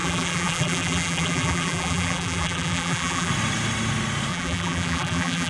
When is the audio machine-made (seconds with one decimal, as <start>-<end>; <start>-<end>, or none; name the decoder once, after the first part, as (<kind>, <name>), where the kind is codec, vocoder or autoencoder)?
0.0-3.3 (vocoder, BigVGAN v2); 4.3-5.5